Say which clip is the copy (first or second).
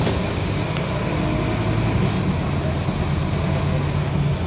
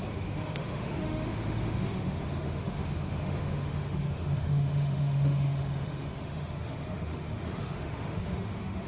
second